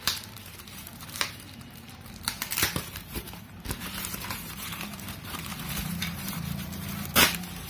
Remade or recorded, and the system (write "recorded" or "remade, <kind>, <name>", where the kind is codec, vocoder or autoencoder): remade, vocoder, BigVGAN v2